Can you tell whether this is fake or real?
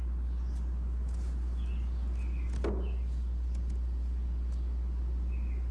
real